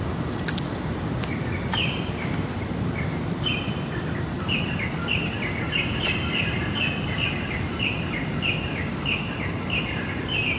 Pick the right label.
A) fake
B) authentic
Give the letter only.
B